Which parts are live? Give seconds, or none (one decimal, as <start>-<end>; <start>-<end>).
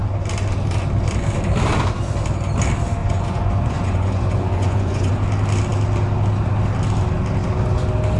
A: 0.0-3.0; 5.1-8.2